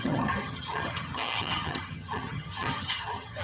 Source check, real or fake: fake